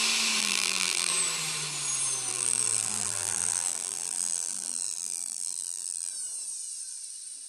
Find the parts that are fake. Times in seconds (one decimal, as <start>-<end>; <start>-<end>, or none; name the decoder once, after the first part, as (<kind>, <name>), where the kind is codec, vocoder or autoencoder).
0.4-1.1 (vocoder, BigVGAN v2); 2.3-6.1